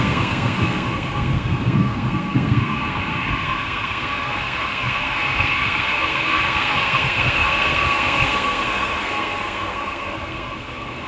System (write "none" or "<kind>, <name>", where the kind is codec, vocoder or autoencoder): codec, SNAC